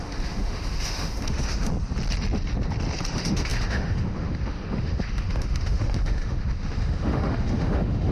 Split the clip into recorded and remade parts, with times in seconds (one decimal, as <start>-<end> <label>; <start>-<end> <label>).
0.0-1.7 remade; 1.7-3.1 recorded; 3.1-8.1 remade